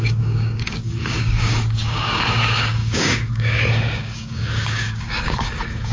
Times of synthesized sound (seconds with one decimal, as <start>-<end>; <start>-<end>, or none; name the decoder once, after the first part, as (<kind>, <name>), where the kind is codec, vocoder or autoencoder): 0.0-5.9 (codec, DAC)